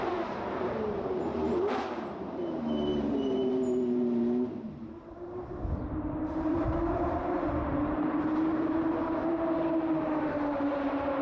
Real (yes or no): no